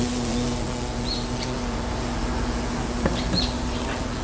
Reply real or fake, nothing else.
real